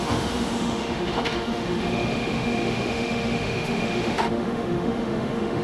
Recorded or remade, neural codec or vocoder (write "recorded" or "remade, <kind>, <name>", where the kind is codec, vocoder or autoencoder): remade, autoencoder, DAC-VAE